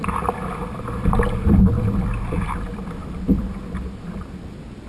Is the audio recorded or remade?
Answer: remade